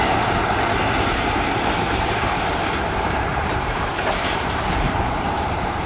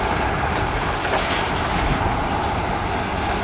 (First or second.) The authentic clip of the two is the second